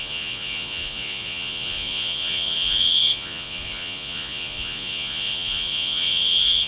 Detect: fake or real fake